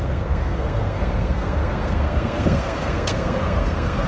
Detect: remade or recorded remade